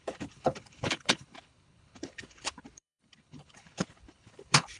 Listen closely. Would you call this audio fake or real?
fake